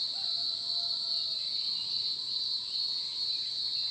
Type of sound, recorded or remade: recorded